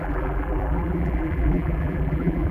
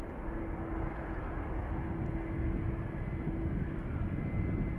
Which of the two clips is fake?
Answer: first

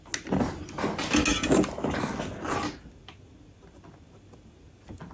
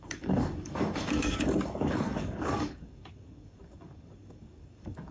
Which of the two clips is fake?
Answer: second